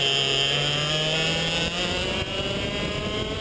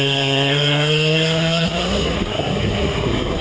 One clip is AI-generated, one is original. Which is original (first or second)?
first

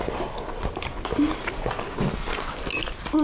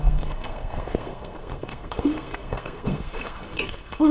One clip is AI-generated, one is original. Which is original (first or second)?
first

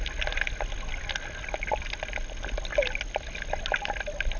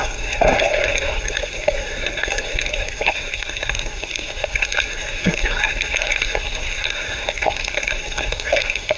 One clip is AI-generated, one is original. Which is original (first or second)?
first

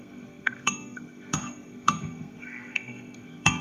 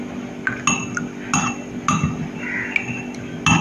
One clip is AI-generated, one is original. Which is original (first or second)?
second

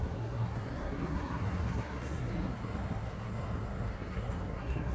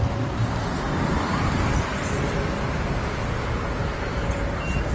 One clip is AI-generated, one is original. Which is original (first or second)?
second